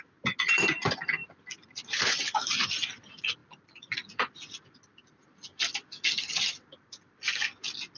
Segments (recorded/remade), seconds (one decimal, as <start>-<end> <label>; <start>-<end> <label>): 0.0-1.2 recorded; 1.2-2.5 remade; 2.5-3.4 recorded; 3.4-4.5 remade; 4.5-5.5 recorded; 5.5-7.1 remade; 7.1-8.0 recorded